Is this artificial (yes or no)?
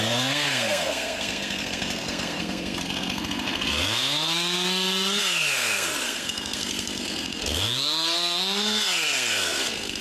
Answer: yes